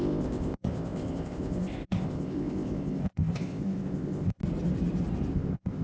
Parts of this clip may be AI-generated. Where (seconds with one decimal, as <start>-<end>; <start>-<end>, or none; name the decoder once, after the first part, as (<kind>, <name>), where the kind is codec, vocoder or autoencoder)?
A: 0.0-4.4 (codec, ZipCodec); 5.3-5.8